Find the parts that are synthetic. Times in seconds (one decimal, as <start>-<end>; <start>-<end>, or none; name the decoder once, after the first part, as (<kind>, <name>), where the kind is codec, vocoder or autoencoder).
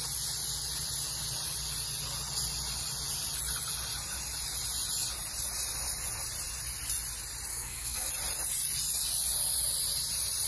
7.5-8.1 (codec, SNAC)